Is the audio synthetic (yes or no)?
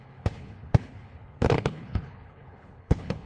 yes